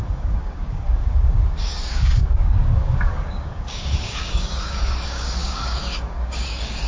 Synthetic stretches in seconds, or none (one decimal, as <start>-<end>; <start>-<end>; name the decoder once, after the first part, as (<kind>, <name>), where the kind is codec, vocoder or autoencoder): 0.0-6.9 (codec, DAC)